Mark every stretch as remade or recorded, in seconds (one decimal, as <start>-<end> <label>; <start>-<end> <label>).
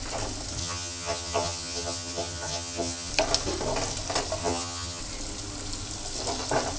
0.0-0.6 recorded; 0.6-3.1 remade; 3.1-4.4 recorded; 4.4-5.0 remade; 5.0-6.8 recorded